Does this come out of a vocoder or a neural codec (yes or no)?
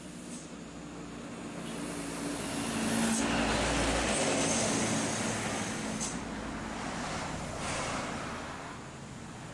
no